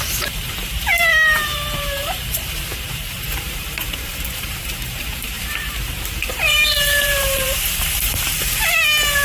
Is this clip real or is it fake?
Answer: fake